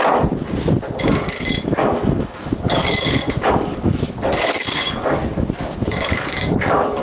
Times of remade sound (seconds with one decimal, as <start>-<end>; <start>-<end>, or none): 1.0-1.8; 2.7-5.2; 5.9-7.0